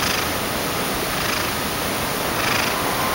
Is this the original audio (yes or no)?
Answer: yes